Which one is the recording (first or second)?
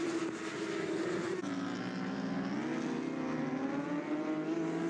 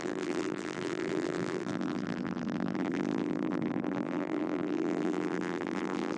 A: first